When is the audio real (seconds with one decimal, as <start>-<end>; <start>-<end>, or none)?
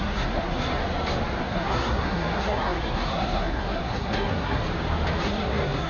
0.8-1.4; 4.6-5.2